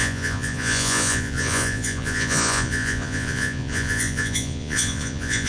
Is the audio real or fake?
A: fake